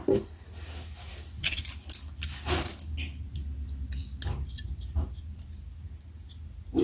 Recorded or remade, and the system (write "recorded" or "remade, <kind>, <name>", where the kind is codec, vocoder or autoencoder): recorded